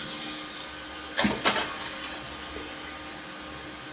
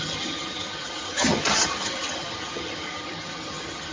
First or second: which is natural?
first